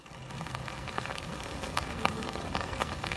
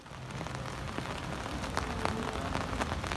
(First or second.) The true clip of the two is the second